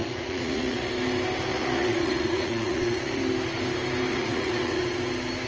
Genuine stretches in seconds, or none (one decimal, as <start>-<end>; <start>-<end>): 0.9-1.5; 3.2-4.1; 4.8-5.5